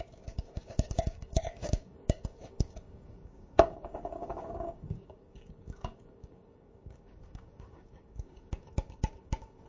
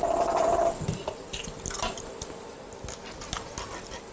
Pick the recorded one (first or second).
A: second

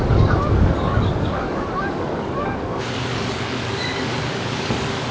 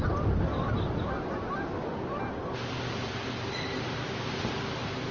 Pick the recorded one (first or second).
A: second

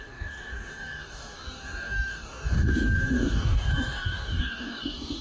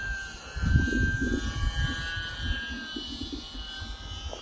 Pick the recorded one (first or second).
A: second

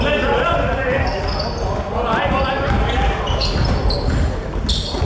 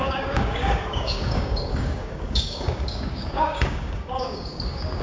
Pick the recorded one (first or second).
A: first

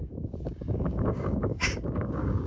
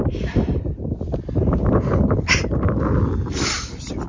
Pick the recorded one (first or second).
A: second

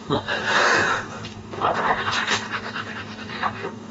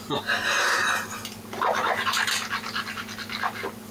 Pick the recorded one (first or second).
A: second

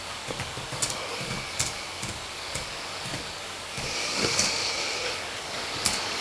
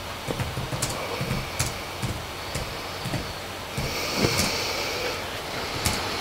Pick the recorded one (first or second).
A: second